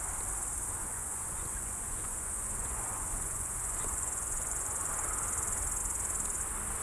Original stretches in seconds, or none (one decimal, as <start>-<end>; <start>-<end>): 0.0-0.8; 4.9-6.8